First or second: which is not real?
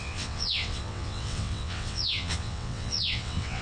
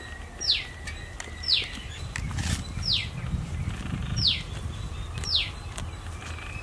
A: first